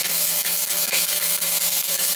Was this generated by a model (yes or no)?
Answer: yes